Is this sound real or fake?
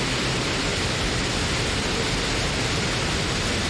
real